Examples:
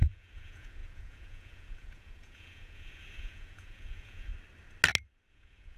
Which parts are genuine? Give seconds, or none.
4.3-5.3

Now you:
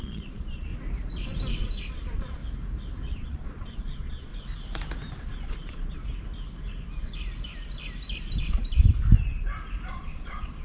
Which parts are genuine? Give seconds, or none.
0.7-1.9; 2.4-3.1; 4.3-5.2; 6.0-9.9